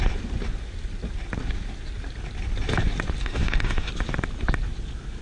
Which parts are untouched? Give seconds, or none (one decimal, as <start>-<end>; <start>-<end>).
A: 0.0-3.2; 3.9-5.2